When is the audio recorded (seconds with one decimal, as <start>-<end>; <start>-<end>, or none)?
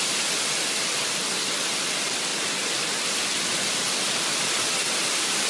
0.0-5.5